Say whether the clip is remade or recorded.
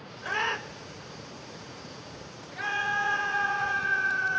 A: remade